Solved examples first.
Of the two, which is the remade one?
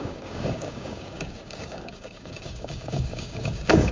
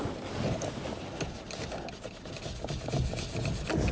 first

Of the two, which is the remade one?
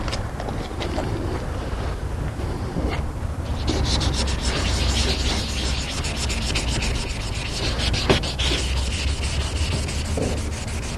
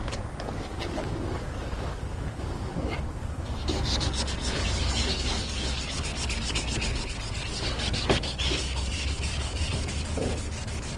second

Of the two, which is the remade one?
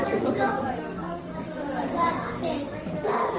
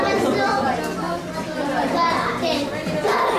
first